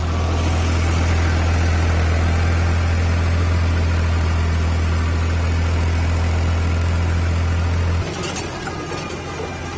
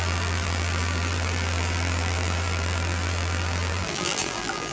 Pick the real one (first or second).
first